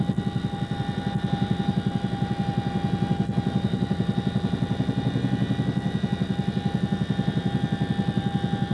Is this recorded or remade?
recorded